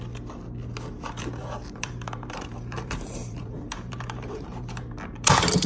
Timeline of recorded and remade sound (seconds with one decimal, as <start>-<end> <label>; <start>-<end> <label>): 0.0-1.4 recorded; 1.4-4.8 remade; 4.8-5.7 recorded